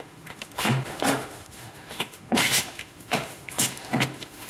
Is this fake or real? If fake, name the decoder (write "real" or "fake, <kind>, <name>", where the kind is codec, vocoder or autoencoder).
fake, autoencoder, DAC-VAE